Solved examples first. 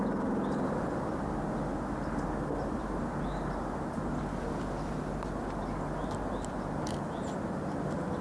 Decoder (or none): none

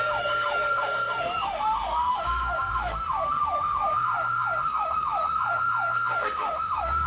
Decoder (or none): autoencoder, DAC-VAE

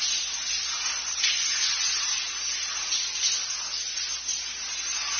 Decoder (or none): none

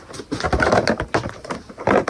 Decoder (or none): none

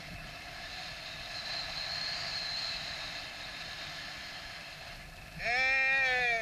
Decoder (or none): none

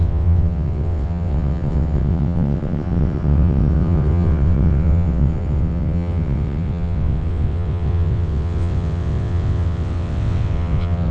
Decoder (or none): vocoder, WaveNeXt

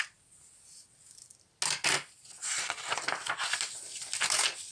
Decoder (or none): none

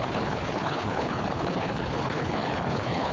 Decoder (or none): codec, HILCodec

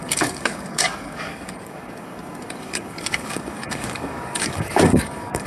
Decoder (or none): codec, DAC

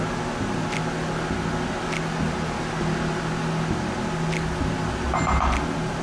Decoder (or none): none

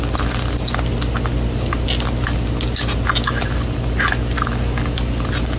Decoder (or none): none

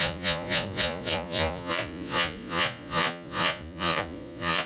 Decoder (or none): vocoder, Vocos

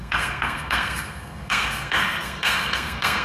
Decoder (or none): codec, SNAC